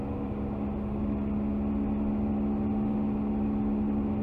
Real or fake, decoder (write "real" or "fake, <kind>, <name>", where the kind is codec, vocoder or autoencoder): real